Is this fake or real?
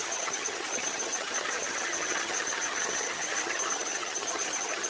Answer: fake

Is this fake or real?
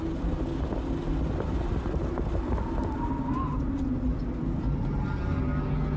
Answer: real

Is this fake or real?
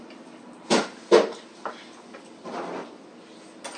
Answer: real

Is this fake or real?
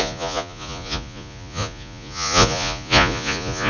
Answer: fake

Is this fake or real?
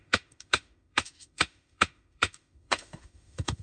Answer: fake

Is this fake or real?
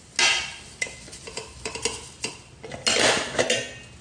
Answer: real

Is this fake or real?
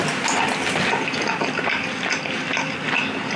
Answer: real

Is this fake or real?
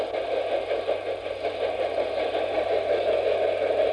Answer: real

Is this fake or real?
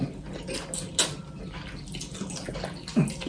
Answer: real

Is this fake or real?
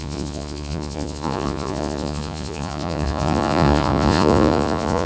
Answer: fake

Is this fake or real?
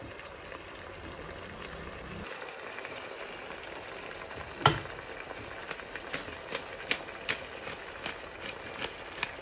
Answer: real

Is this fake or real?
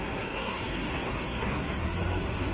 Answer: fake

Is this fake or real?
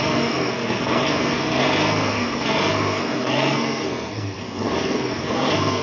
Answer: fake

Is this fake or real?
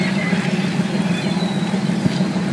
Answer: real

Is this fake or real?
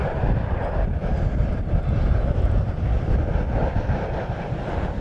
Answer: real